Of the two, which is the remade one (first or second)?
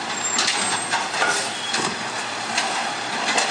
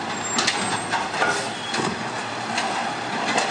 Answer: first